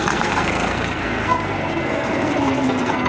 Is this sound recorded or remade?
remade